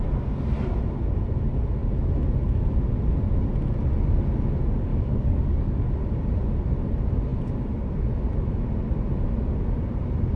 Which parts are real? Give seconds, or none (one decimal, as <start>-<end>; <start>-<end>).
0.0-4.9; 5.9-10.4